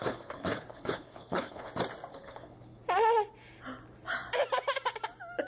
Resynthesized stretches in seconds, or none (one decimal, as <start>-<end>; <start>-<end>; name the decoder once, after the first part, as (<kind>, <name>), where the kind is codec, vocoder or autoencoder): 0.0-1.7 (codec, HILCodec); 2.1-2.8